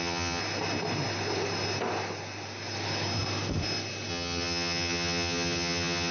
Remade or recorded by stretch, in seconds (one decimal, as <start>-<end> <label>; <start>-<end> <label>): 0.0-0.4 remade; 0.4-4.1 recorded; 4.1-6.1 remade